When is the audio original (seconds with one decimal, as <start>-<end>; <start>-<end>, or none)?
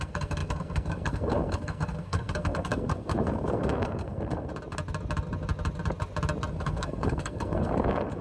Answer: 4.5-6.5